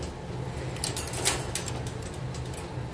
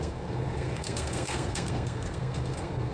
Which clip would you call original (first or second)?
first